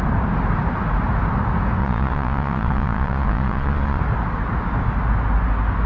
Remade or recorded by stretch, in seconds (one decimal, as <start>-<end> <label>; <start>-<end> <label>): 0.0-1.8 recorded; 1.8-4.0 remade; 4.0-5.9 recorded